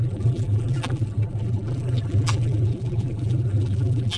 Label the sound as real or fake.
fake